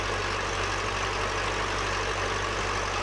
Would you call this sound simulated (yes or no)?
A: no